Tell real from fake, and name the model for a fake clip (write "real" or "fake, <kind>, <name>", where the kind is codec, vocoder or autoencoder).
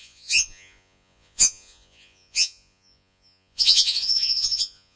fake, vocoder, Vocos